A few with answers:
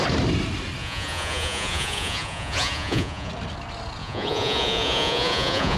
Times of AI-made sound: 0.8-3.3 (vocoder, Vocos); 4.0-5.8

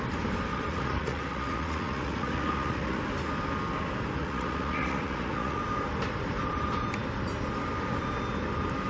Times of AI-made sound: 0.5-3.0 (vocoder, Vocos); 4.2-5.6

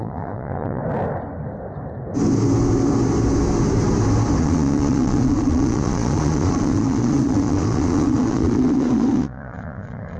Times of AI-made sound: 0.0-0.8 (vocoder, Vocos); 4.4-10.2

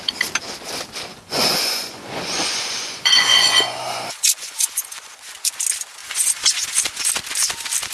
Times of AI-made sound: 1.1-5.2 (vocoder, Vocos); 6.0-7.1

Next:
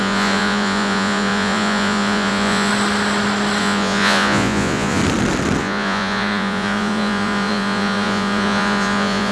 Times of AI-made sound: 0.0-2.7 (vocoder, Vocos); 3.6-5.0; 5.6-9.3

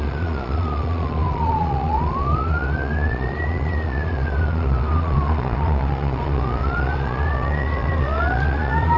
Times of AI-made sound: 0.0-9.0 (vocoder, Vocos)

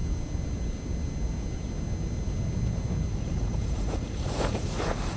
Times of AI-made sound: 3.1-5.2 (vocoder, Vocos)

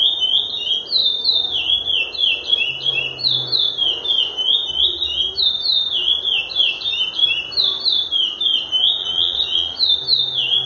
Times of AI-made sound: 9.0-9.8 (vocoder, Vocos)